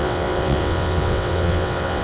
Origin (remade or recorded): remade